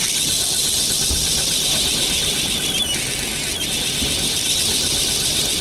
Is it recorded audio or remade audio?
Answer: recorded